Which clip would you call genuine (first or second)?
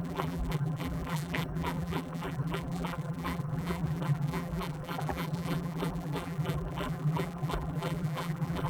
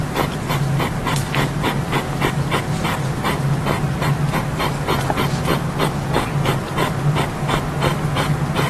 second